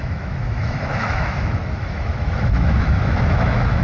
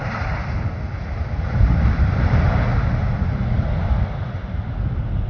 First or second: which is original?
second